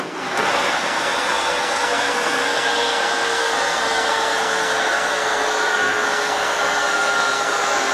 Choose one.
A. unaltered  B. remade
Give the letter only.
B